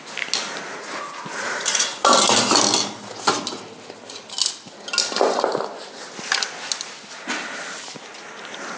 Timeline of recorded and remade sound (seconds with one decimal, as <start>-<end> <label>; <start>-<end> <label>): 0.0-0.7 recorded; 0.7-2.1 remade; 2.1-8.8 recorded